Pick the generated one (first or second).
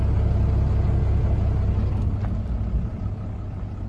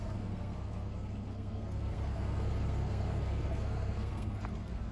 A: second